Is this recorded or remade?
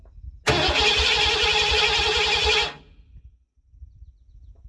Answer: recorded